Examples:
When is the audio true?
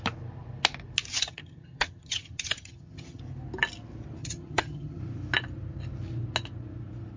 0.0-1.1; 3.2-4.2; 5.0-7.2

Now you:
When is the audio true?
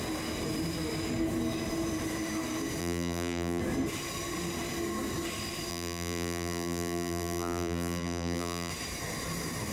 0.0-2.8; 3.6-5.7; 8.7-9.7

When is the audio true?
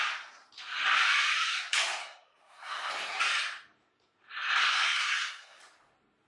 0.0-2.0; 2.9-4.6; 5.6-6.3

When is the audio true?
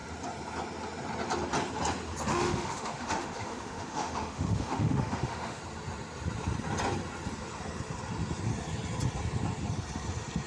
0.0-2.3; 5.6-10.5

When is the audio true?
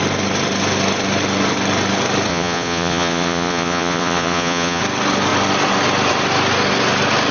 0.0-2.3; 4.8-7.3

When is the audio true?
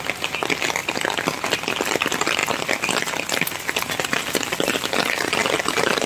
0.0-6.1